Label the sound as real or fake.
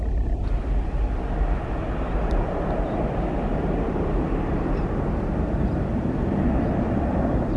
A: real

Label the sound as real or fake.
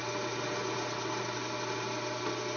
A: real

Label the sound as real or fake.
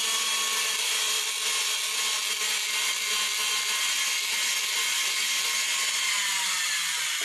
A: real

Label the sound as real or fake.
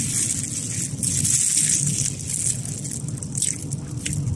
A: real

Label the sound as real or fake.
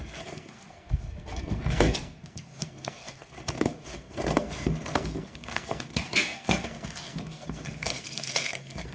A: fake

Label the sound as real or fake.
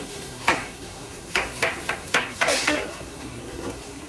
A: fake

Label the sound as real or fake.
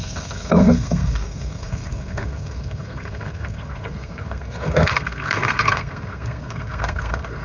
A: fake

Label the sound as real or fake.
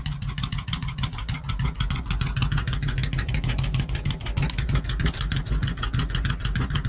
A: fake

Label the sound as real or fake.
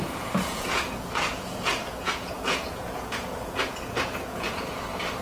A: fake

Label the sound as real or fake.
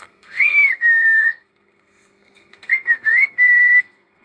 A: fake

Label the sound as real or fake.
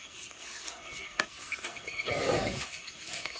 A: fake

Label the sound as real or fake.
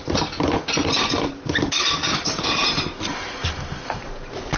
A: real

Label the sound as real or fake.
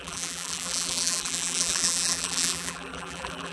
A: fake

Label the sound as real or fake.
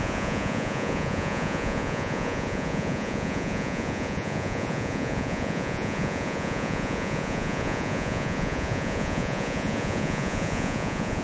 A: fake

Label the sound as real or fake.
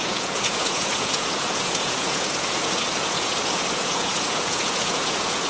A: fake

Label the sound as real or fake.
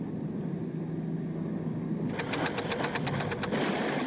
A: real